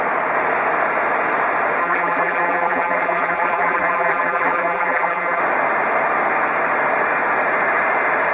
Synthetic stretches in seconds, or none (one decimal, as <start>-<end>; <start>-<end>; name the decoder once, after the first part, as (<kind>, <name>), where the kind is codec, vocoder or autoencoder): 1.8-5.4 (vocoder, BigVGAN v2)